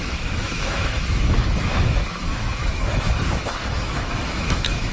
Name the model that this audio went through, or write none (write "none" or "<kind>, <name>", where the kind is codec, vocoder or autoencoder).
autoencoder, DAC-VAE